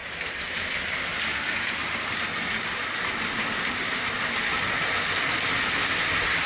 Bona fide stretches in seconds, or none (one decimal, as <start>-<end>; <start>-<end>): 0.7-6.5